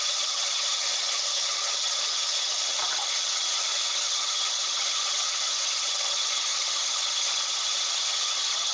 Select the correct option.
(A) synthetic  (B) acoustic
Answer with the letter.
A